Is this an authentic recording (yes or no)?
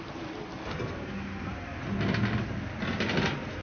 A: yes